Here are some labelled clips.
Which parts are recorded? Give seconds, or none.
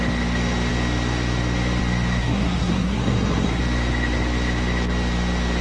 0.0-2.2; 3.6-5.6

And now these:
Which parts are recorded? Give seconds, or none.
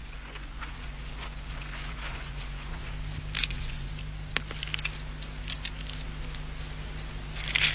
2.9-3.4; 3.9-7.7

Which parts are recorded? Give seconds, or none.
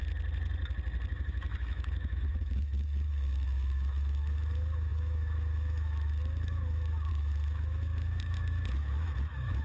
0.0-1.1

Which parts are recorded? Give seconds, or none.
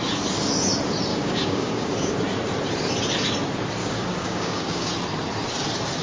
0.0-1.1; 2.1-3.8; 4.9-6.0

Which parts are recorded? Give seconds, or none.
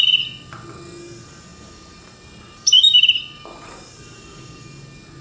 0.0-1.5; 4.6-5.2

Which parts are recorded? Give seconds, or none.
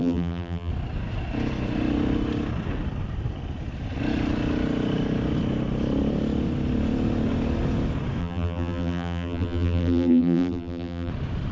0.7-8.2; 11.1-11.5